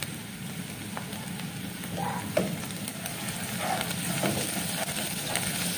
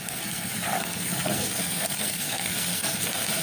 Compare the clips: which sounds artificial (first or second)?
second